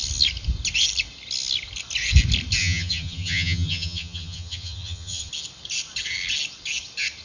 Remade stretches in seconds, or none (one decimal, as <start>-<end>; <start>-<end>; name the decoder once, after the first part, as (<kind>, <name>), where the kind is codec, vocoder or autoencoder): 2.6-5.3 (vocoder, HiFi-GAN)